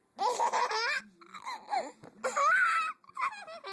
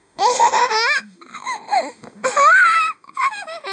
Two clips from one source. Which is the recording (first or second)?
first